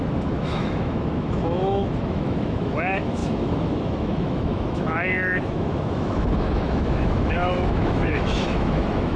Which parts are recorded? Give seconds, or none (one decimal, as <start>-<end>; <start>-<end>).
none